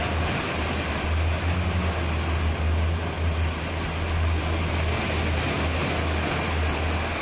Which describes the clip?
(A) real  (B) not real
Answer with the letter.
A